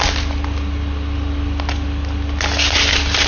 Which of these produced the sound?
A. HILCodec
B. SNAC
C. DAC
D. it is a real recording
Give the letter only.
D